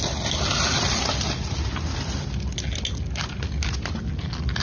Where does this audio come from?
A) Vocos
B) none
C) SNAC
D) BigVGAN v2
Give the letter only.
B